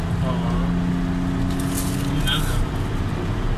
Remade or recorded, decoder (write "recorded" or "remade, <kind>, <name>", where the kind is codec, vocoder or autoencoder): recorded